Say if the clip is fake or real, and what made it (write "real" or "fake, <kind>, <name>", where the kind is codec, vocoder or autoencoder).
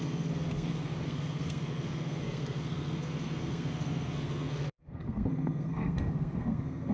fake, codec, SNAC